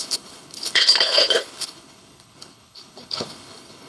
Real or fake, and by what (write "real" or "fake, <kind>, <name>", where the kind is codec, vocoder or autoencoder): fake, codec, HILCodec